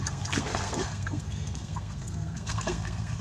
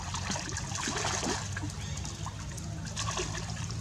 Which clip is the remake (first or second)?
first